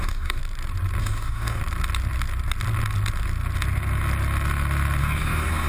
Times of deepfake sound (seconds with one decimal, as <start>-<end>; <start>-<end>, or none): 0.0-0.4; 1.0-1.6; 5.0-5.7